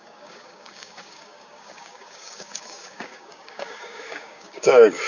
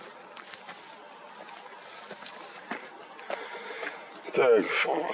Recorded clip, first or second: second